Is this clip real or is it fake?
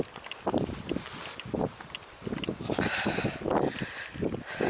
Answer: real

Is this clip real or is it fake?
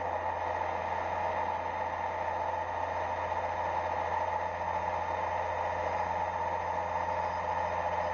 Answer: real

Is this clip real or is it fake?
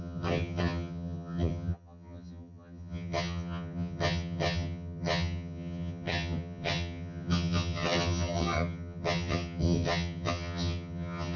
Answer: fake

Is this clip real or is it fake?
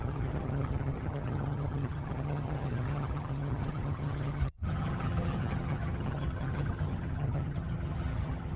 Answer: fake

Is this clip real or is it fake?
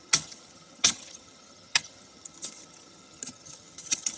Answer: fake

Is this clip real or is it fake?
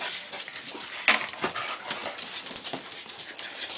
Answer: real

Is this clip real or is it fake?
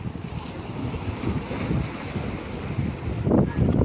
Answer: real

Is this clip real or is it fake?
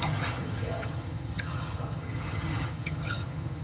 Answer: fake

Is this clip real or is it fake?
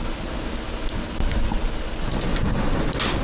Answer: real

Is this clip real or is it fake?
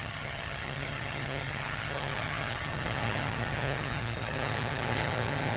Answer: fake